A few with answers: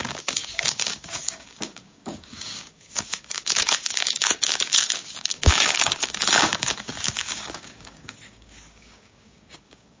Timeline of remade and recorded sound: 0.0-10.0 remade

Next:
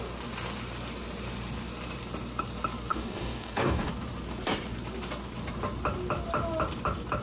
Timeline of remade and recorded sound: 0.0-2.9 recorded; 2.9-3.9 remade; 3.9-7.2 recorded

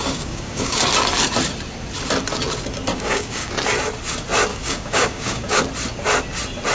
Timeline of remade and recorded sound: 0.0-0.8 remade; 0.8-2.9 recorded; 2.9-3.5 remade; 3.5-4.5 recorded; 4.5-5.6 remade; 5.6-6.7 recorded

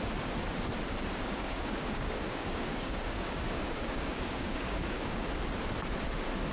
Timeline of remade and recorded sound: 0.0-1.4 recorded; 1.4-5.3 remade; 5.3-6.5 recorded

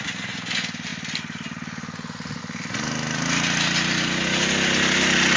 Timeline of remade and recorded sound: 0.0-5.4 recorded